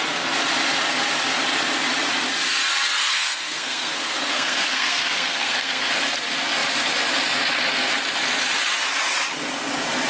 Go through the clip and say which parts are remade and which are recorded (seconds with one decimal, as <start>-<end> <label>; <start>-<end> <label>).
0.0-3.0 recorded; 3.0-5.9 remade; 5.9-10.1 recorded